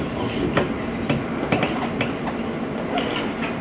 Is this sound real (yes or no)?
yes